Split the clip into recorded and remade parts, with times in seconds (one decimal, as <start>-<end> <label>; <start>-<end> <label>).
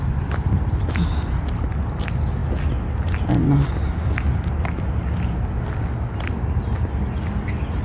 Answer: 0.0-7.8 recorded